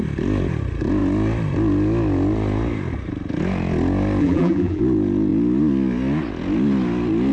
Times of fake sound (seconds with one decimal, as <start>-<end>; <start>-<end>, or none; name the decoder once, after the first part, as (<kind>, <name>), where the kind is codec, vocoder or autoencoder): 4.2-4.8 (vocoder, BigVGAN v2)